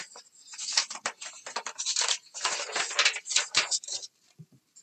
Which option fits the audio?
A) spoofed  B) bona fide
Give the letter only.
A